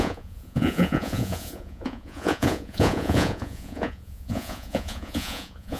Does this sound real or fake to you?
fake